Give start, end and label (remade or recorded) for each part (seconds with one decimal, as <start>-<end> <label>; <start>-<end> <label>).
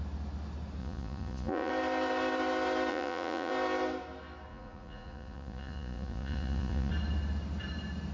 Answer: 0.0-0.8 recorded; 0.8-1.7 remade; 1.7-2.9 recorded; 2.9-3.5 remade; 3.5-4.5 recorded; 4.5-6.9 remade; 6.9-8.1 recorded